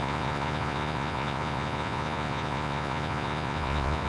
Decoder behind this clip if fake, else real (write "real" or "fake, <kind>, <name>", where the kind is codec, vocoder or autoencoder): fake, vocoder, Vocos